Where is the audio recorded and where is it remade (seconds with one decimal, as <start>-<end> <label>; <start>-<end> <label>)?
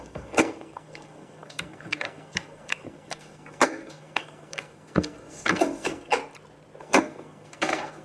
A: 0.0-6.2 remade; 6.2-6.8 recorded; 6.8-8.0 remade